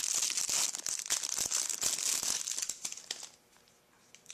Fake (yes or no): no